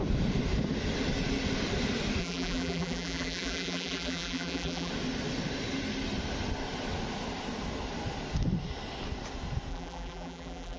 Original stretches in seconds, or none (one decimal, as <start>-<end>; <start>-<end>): 0.0-2.2; 4.9-9.7